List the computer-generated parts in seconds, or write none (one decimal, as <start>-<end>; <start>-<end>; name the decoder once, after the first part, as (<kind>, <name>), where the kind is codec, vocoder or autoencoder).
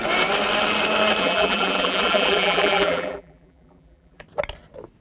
1.2-4.2 (vocoder, BigVGAN v2)